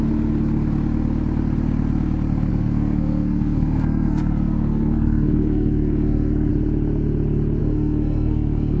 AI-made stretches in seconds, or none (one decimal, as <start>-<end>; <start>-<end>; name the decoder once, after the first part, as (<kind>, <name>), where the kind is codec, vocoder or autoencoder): 2.5-6.5 (codec, SNAC); 7.6-8.8